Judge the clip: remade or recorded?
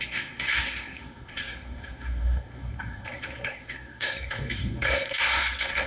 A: remade